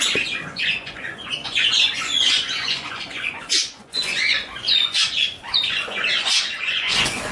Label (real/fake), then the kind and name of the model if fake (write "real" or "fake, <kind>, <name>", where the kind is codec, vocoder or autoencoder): fake, vocoder, Vocos